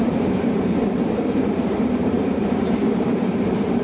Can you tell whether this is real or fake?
fake